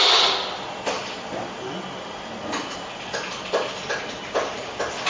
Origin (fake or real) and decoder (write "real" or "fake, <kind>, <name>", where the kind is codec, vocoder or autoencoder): real